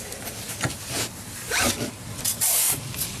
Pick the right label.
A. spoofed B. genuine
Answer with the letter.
A